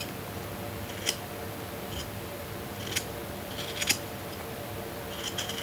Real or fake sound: real